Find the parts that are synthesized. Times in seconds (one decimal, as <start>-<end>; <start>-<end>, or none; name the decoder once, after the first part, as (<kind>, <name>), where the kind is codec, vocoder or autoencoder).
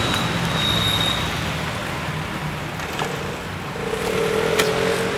none